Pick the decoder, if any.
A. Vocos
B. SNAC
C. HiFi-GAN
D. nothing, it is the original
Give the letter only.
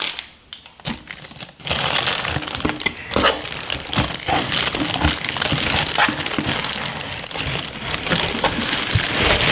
D